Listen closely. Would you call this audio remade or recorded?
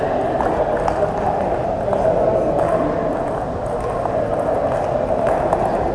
recorded